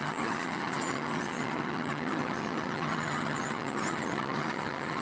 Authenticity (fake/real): fake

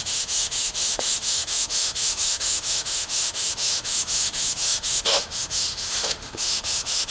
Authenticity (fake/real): fake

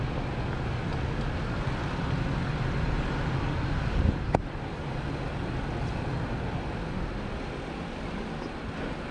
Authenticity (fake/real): real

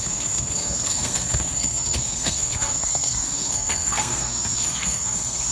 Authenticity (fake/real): fake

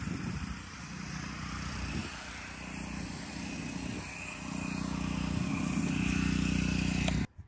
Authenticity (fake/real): real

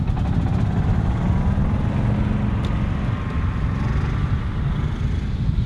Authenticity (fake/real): real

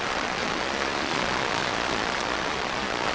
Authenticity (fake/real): fake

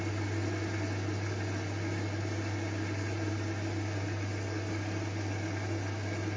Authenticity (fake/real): real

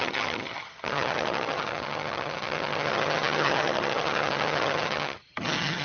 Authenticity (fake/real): fake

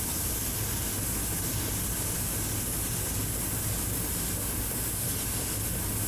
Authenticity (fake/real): real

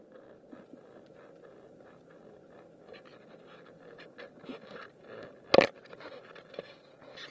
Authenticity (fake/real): real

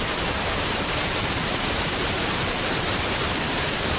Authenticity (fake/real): fake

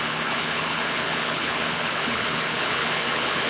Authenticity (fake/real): fake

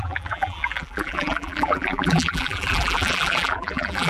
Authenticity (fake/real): fake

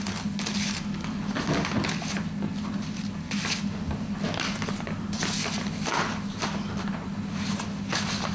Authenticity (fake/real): real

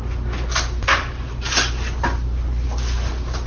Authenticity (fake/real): real